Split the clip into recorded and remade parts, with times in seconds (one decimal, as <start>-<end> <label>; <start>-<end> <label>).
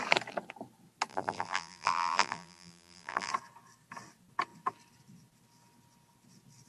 0.0-1.1 recorded; 1.1-3.3 remade; 3.3-6.7 recorded